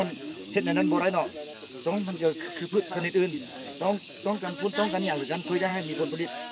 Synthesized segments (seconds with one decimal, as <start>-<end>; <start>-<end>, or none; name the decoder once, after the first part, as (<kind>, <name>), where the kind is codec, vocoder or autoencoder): 0.0-6.5 (codec, DAC)